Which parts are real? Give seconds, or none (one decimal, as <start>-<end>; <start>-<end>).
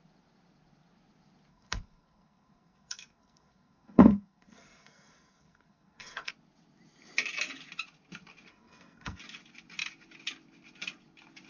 0.0-1.5; 6.3-8.5; 9.2-11.5